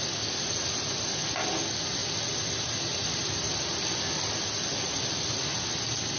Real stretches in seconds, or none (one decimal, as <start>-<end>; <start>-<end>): 0.0-6.2